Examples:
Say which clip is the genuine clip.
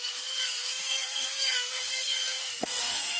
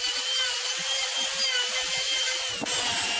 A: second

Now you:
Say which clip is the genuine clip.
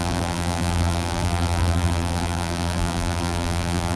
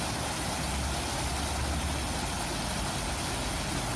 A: second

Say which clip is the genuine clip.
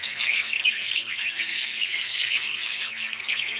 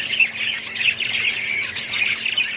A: second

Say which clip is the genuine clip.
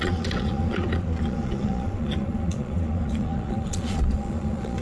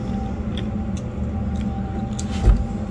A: second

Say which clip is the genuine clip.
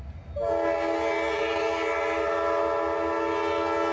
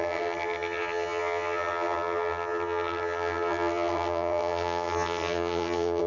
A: first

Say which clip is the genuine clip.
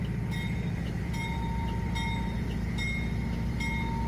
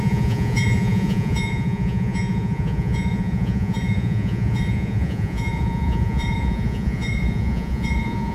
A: first